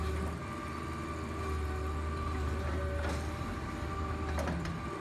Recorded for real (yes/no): yes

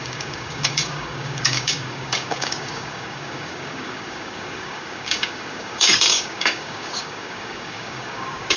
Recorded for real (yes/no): no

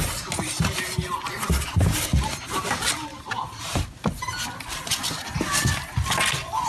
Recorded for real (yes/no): yes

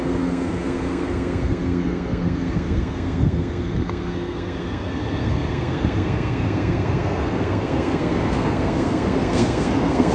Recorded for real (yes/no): no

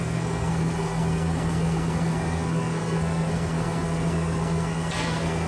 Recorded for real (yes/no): no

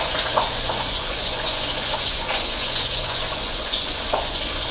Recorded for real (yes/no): no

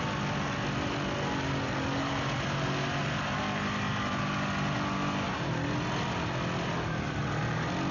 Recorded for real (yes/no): yes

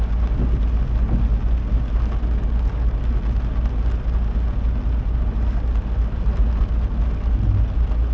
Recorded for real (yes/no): yes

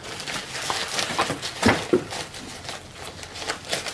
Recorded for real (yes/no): yes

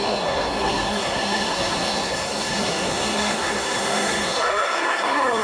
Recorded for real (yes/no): no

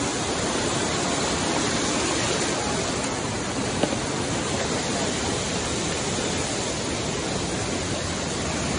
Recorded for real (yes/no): yes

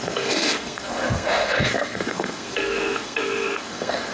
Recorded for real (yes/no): no